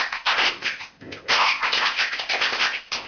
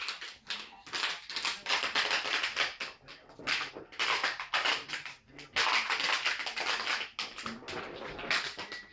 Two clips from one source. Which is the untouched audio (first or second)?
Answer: second